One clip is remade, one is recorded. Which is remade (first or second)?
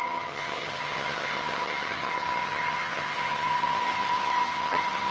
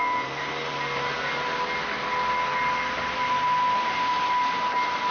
first